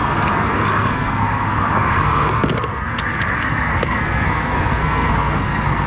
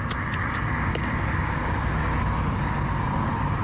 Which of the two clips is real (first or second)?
second